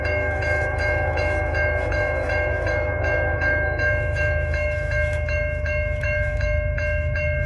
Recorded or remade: remade